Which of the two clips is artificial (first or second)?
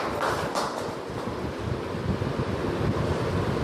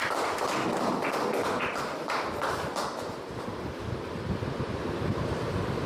second